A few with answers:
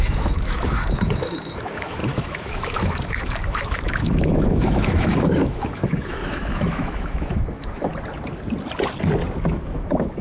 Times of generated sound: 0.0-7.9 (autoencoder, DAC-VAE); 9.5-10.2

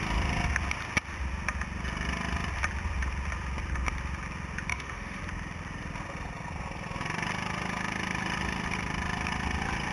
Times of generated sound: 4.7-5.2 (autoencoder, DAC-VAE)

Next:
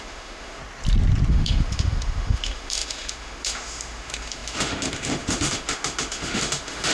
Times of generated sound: 0.0-0.6 (autoencoder, DAC-VAE); 1.3-6.9

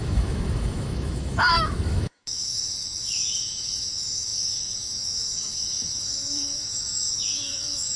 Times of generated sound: 0.0-8.0 (autoencoder, DAC-VAE)

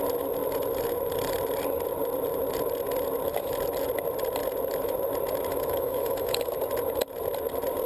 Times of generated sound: 5.5-6.5 (autoencoder, DAC-VAE)

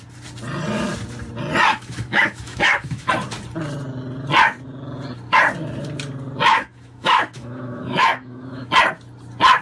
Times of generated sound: 1.7-3.1 (autoencoder, DAC-VAE); 6.5-8.7